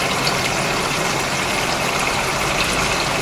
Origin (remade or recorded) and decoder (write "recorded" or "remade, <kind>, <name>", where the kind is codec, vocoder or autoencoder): recorded